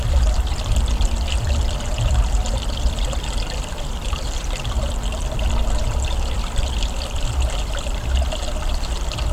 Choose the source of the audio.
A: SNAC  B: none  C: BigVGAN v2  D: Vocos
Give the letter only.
C